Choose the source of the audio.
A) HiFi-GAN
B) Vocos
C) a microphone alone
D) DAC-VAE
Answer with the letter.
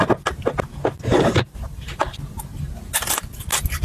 C